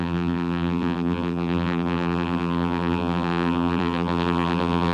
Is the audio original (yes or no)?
no